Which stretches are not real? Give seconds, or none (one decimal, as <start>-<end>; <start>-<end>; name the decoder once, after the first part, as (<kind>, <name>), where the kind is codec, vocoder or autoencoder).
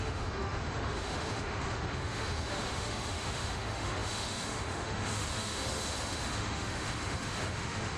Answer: 0.0-8.0 (autoencoder, DAC-VAE)